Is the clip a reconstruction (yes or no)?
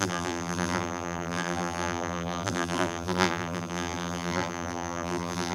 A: yes